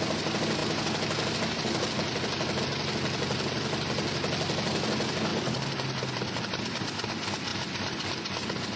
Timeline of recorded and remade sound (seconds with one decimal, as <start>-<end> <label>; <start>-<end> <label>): 0.0-8.8 recorded